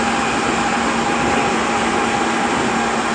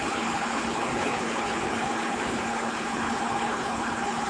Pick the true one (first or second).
first